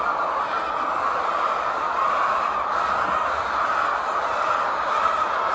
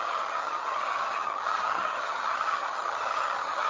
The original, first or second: first